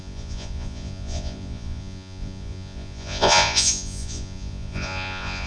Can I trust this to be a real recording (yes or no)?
no